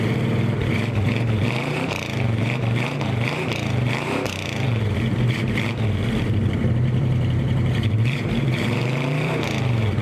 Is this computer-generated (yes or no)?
yes